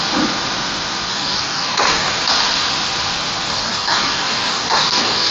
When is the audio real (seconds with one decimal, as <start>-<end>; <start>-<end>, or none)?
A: 0.0-1.1; 2.1-3.5